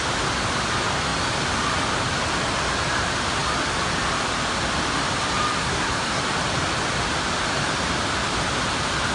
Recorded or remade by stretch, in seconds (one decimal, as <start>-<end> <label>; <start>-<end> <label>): 0.0-5.6 recorded; 5.6-6.2 remade; 6.2-9.1 recorded